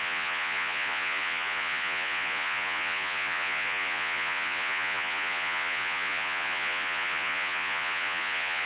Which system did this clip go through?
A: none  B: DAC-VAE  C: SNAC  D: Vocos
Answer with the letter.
D